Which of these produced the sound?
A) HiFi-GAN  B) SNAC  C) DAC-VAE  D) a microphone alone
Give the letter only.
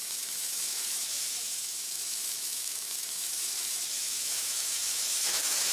C